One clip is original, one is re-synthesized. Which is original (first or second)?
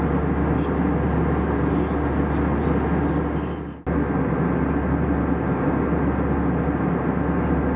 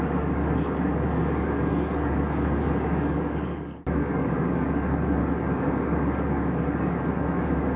first